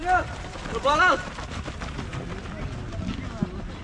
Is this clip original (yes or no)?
yes